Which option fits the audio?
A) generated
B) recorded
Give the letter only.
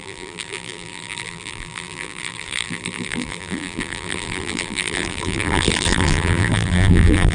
A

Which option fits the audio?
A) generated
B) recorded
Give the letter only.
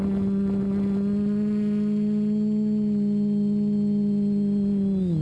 B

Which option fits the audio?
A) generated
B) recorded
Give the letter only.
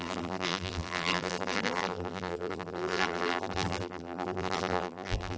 A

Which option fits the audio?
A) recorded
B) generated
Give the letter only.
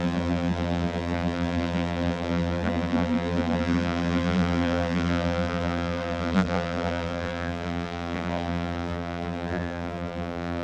B